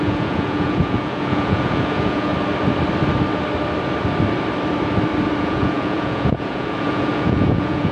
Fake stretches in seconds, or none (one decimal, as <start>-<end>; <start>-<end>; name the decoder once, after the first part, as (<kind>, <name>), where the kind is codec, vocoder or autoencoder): 0.0-2.3 (vocoder, Vocos); 5.4-7.9

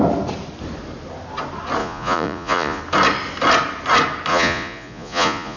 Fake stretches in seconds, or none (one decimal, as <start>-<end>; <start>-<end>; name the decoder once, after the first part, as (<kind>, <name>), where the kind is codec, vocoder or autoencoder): 1.8-2.8 (vocoder, Vocos); 4.3-5.6

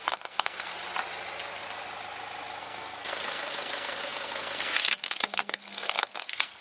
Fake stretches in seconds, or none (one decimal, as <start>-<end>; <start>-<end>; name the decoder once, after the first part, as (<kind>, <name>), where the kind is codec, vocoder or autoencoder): 0.0-0.7 (codec, SNAC); 2.6-6.6

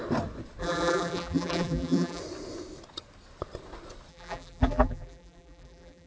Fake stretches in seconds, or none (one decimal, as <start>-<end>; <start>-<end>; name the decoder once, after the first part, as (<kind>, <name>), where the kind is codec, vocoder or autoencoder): 0.6-2.2 (vocoder, BigVGAN v2); 4.1-6.1

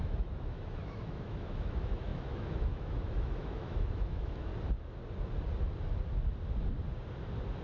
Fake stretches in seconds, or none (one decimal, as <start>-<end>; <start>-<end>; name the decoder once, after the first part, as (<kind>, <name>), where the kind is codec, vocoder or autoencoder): 0.0-4.5 (autoencoder, DAC-VAE)

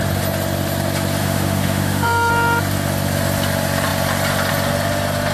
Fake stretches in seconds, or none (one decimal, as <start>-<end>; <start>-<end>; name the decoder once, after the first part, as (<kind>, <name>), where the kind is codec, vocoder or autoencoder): 1.2-2.3 (autoencoder, DAC-VAE)